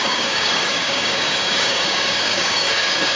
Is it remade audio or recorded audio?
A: remade